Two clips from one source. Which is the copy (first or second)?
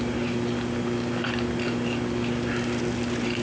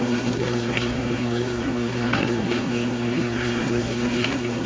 second